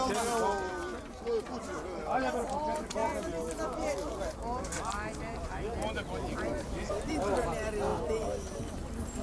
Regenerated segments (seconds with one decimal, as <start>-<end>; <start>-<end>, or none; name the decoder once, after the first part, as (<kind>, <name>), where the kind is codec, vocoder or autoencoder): none